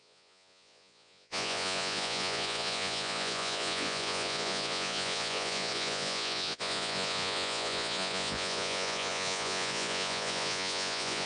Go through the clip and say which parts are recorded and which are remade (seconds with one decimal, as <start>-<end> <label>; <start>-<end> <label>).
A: 0.0-11.3 remade